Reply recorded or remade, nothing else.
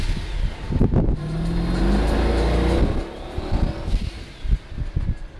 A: recorded